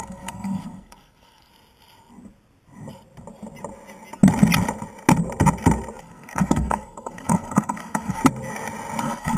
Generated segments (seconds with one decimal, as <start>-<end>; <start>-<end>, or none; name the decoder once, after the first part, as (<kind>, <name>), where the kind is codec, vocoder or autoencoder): 0.0-1.5 (codec, SNAC); 6.0-8.2; 9.0-9.4